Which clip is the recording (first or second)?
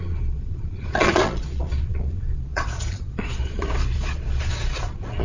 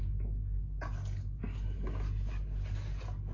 second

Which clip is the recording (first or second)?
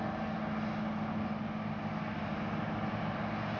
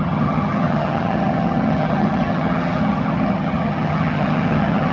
first